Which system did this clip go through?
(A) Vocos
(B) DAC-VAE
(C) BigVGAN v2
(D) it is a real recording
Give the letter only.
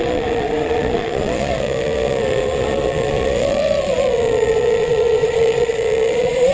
A